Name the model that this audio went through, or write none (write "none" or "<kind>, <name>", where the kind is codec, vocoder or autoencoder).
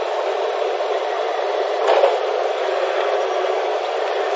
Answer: vocoder, BigVGAN v2